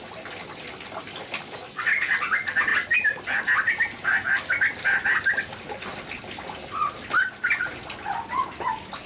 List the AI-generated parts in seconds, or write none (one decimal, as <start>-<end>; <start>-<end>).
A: none